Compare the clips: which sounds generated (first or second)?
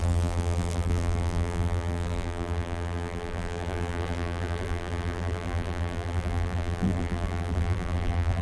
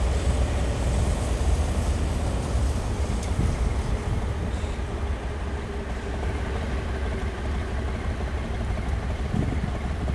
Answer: first